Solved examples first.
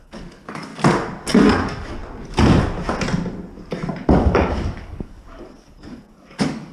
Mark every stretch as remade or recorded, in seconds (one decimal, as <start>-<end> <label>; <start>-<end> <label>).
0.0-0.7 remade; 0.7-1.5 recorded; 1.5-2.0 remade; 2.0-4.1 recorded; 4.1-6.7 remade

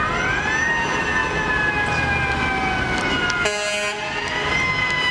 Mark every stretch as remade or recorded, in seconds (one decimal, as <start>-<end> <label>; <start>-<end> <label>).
0.0-5.1 recorded

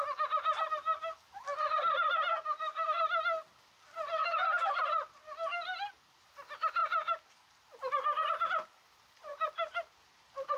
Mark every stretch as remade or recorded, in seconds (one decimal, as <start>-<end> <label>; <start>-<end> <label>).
0.0-4.2 recorded; 4.2-4.7 remade; 4.7-10.6 recorded

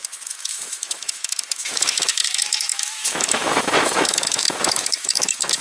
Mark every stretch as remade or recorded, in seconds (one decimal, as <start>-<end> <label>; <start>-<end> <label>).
0.0-5.6 remade

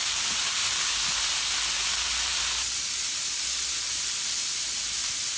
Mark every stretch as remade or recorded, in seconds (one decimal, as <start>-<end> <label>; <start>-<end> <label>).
0.0-5.4 recorded

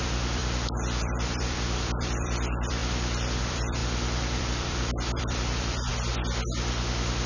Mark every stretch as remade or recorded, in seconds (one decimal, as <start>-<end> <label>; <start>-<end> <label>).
0.0-0.4 remade; 0.4-1.0 recorded; 1.0-2.8 remade; 2.8-3.4 recorded; 3.4-3.8 remade; 3.8-4.4 recorded; 4.4-5.9 remade; 5.9-7.3 recorded